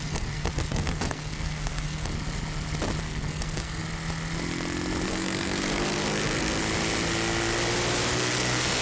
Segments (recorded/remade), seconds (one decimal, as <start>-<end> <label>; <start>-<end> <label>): 0.0-2.1 remade; 2.1-3.0 recorded; 3.0-3.8 remade; 3.8-5.1 recorded; 5.1-6.6 remade; 6.6-8.1 recorded; 8.1-8.8 remade